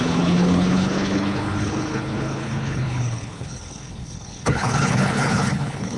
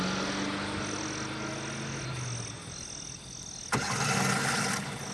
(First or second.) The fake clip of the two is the first